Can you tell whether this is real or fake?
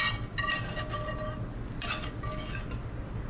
real